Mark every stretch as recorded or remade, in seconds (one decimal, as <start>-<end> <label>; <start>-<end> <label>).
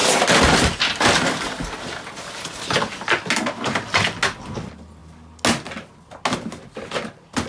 0.0-7.5 recorded